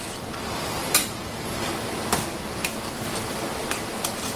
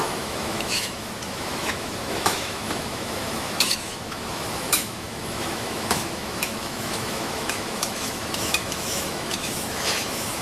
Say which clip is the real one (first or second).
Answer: first